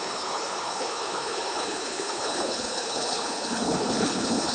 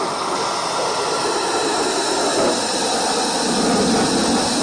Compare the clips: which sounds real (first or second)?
second